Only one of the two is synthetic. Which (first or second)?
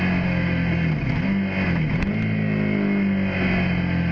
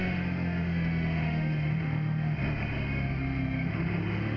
second